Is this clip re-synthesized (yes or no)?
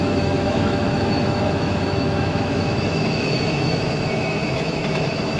yes